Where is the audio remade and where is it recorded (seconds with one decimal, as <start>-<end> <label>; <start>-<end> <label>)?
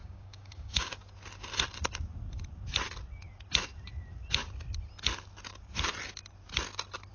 0.0-0.9 remade; 0.9-7.1 recorded